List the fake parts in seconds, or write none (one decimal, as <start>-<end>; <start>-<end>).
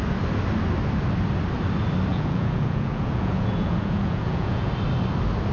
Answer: 2.1-4.7